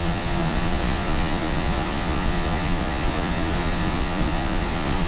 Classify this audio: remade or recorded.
remade